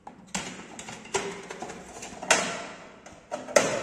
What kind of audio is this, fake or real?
real